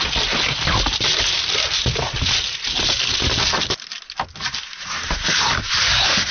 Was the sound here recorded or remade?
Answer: recorded